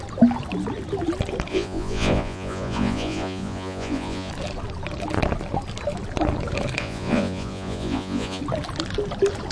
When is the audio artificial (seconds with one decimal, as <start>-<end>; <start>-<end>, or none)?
1.5-4.3; 6.8-8.4